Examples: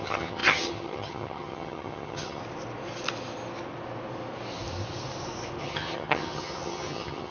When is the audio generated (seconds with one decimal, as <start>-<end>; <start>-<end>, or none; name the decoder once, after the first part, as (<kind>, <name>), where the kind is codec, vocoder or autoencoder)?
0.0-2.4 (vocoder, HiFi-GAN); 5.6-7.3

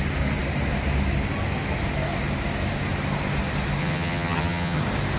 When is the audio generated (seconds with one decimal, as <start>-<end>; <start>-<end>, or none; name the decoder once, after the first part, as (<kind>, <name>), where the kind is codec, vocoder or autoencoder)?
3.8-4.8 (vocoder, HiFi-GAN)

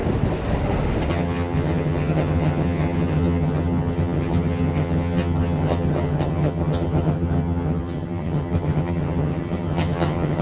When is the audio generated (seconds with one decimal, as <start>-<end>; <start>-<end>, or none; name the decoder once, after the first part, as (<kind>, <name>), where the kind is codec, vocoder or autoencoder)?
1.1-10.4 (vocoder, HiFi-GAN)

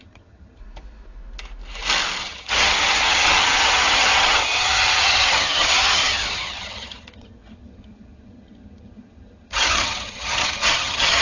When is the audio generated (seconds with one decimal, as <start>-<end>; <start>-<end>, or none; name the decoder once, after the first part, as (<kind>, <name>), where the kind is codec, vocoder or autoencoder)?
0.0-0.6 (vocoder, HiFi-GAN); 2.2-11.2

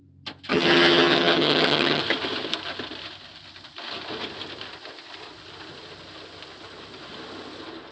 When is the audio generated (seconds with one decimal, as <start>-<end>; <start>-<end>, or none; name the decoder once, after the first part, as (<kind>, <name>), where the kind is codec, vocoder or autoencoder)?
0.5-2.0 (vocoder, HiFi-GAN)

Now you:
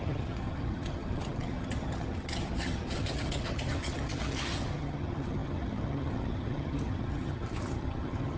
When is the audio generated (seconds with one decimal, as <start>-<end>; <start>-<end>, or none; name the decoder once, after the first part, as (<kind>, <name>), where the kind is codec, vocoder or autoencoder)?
0.0-8.4 (vocoder, HiFi-GAN)